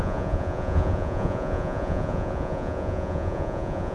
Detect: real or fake fake